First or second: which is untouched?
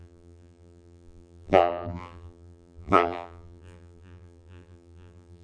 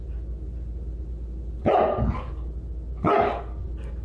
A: second